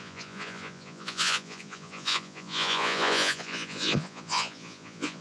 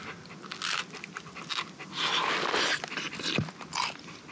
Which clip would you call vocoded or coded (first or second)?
first